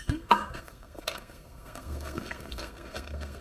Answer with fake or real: fake